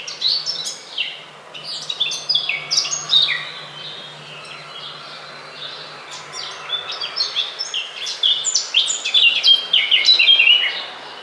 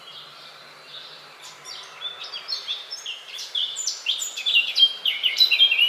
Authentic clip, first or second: first